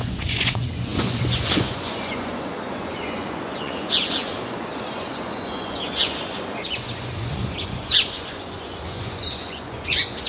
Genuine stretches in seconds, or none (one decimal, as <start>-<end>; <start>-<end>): none